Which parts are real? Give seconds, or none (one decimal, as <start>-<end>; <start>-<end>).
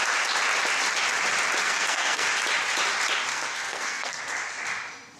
0.0-1.6; 2.3-3.3; 4.2-5.2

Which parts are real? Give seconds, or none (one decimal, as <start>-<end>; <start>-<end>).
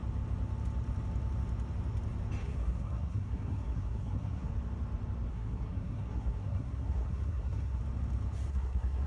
0.0-2.4; 4.5-5.3; 7.8-8.5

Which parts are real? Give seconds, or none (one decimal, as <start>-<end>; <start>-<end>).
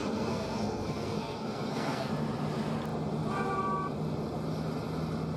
2.1-5.4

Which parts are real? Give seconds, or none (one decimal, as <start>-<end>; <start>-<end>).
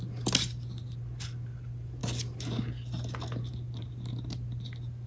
0.0-5.1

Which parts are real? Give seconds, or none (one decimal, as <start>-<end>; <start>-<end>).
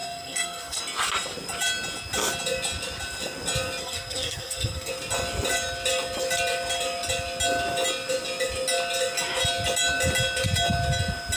0.8-3.8; 4.9-11.4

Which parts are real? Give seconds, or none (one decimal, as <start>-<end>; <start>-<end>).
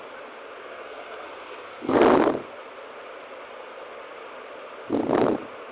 0.0-0.6; 2.0-5.7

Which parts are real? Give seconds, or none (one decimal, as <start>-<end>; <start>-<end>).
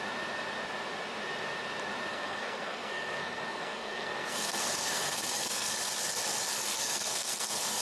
0.0-2.1; 5.7-6.5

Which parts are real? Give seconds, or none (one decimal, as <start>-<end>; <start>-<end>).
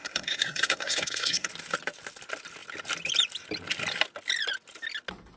1.5-5.4